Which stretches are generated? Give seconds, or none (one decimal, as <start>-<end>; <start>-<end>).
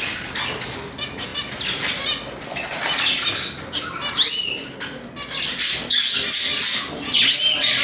none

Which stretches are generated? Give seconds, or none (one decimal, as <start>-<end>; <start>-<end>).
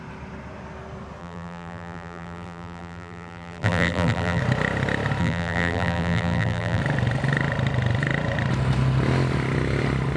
1.2-4.4; 5.2-6.8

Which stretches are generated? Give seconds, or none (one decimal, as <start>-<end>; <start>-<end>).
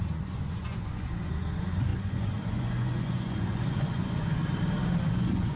0.0-4.4; 5.0-5.6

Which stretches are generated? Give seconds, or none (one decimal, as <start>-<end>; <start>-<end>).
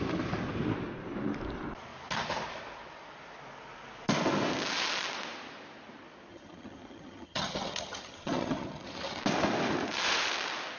6.3-9.2